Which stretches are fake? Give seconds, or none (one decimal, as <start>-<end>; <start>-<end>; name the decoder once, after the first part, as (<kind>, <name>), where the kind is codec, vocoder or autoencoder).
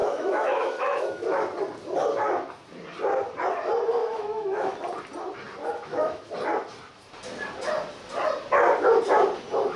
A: 0.0-1.4 (autoencoder, DAC-VAE); 4.0-4.8; 5.6-6.3